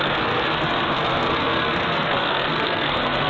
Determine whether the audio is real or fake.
fake